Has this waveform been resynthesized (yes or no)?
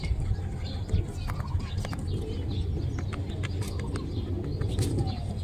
no